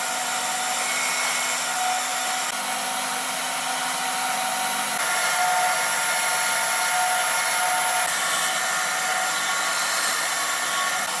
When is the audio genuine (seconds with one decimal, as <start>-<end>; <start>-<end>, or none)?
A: 0.0-11.2